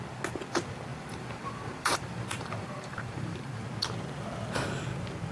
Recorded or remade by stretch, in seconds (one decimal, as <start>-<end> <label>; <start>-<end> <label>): 0.0-0.9 recorded; 0.9-3.6 remade; 3.6-5.3 recorded